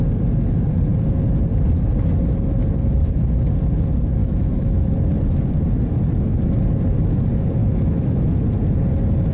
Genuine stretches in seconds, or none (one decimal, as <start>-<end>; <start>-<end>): 0.0-4.2; 4.9-7.6; 8.3-9.3